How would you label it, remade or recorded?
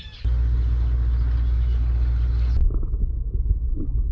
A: recorded